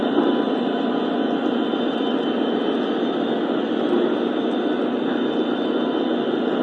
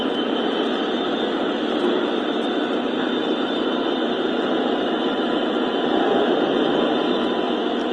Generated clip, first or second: second